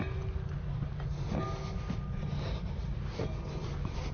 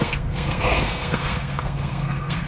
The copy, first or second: second